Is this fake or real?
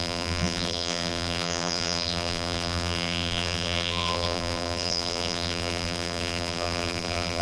fake